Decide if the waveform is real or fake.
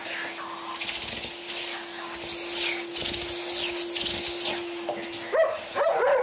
real